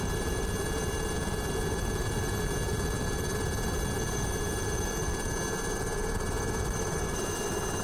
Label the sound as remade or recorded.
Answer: recorded